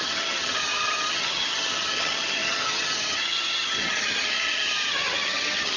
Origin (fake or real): fake